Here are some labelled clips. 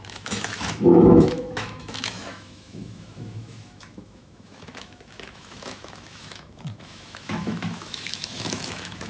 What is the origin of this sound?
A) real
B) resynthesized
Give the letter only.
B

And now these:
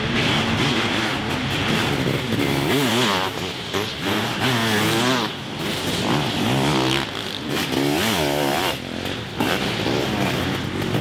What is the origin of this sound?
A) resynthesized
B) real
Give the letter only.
B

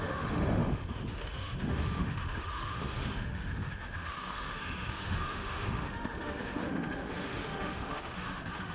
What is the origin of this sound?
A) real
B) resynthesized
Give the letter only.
B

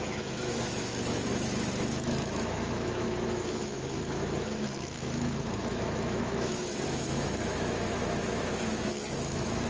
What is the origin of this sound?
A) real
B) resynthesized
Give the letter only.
B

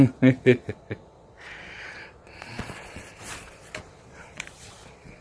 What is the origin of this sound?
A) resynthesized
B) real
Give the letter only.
A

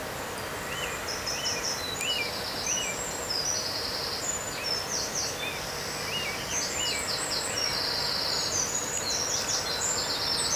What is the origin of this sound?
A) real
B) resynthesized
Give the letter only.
A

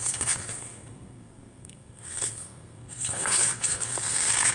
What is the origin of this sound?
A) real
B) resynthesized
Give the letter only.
B